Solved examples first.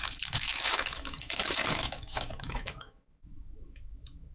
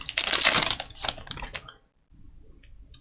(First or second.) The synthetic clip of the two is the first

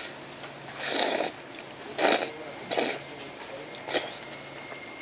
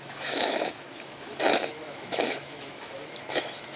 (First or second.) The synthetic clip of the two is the second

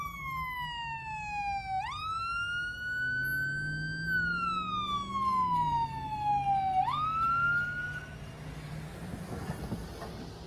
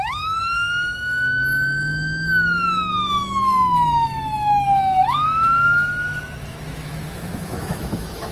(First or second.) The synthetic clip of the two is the second